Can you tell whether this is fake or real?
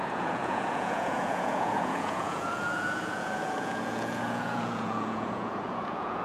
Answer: fake